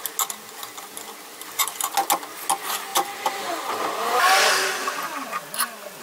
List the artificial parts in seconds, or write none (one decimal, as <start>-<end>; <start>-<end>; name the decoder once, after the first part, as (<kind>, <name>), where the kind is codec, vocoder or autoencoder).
2.9-4.9 (vocoder, BigVGAN v2)